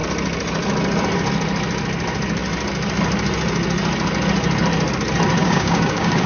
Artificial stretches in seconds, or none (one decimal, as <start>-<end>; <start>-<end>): 5.4-6.3